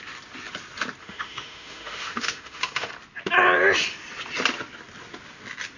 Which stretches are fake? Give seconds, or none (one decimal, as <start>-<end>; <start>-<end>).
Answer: 1.0-2.9